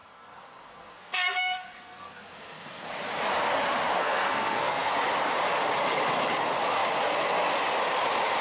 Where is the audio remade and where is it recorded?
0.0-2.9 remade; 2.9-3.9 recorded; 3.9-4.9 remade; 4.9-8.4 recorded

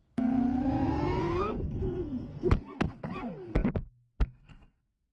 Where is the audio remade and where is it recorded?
0.0-5.1 remade

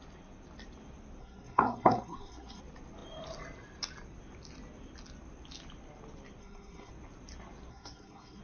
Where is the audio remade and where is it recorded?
0.0-1.2 recorded; 1.2-2.6 remade; 2.6-6.4 recorded; 6.4-6.9 remade; 6.9-7.7 recorded; 7.7-8.4 remade